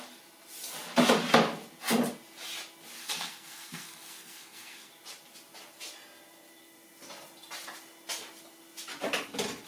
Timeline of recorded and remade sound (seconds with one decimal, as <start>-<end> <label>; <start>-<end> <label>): 0.0-3.0 recorded; 3.0-4.9 remade; 4.9-9.7 recorded